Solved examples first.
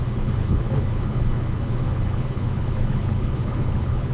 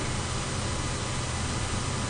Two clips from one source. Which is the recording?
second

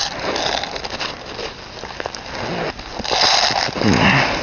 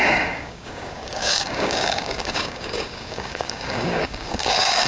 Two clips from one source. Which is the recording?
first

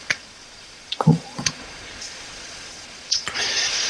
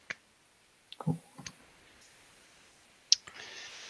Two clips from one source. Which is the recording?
second